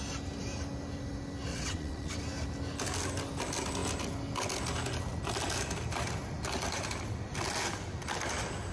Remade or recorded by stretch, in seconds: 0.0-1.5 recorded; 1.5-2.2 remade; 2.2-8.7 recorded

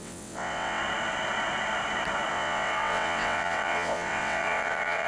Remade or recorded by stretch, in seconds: 0.0-0.8 remade; 0.8-2.3 recorded; 2.3-5.1 remade

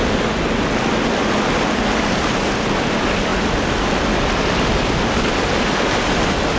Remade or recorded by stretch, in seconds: 0.0-6.6 recorded

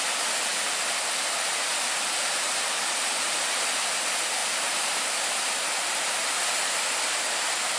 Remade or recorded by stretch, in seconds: 0.0-7.8 recorded